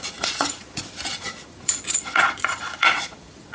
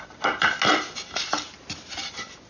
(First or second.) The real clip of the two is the second